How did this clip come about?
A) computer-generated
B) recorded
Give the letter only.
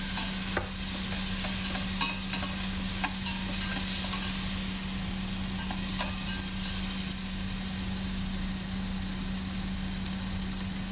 B